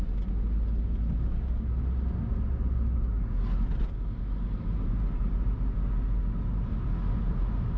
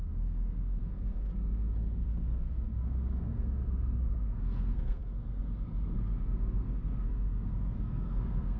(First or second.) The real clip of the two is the first